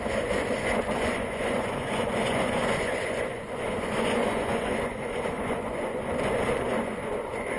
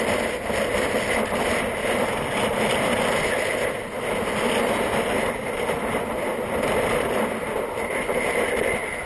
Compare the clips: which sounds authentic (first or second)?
second